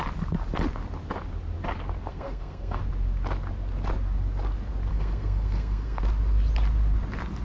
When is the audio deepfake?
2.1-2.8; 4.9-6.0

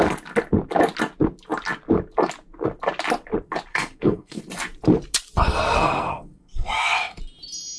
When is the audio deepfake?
3.7-4.4; 5.5-7.2

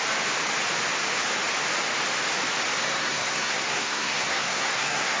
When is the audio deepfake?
2.8-5.2

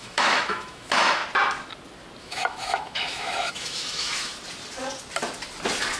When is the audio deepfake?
0.0-1.2; 2.2-4.3

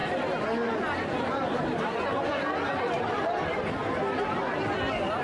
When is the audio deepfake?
none